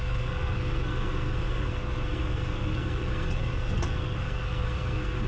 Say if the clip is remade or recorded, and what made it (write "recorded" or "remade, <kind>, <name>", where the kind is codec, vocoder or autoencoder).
remade, codec, SNAC